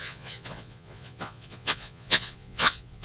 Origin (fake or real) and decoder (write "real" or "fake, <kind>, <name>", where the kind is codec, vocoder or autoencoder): fake, vocoder, Vocos